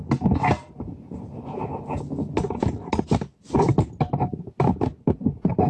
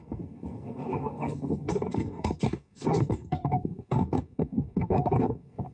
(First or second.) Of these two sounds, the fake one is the second